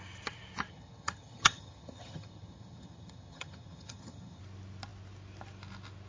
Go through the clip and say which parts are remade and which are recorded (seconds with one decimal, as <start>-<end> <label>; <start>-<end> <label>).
0.0-0.7 recorded; 0.7-4.4 remade; 4.4-6.1 recorded